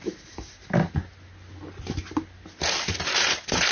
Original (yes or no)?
yes